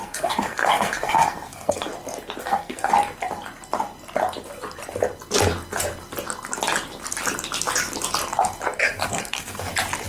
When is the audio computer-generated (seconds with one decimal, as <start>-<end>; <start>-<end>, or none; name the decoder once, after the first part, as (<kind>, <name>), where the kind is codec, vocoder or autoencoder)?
0.0-1.9 (codec, SNAC); 2.4-2.9; 8.8-9.7